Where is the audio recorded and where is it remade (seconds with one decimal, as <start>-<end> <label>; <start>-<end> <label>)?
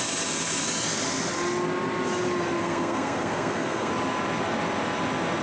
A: 0.0-2.6 recorded; 2.6-3.9 remade; 3.9-5.4 recorded